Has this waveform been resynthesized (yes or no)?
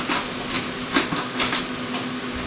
no